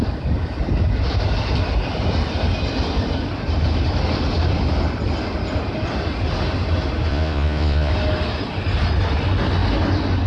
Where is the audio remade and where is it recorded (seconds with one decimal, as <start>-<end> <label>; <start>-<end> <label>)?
0.0-7.1 recorded; 7.1-7.9 remade; 7.9-10.3 recorded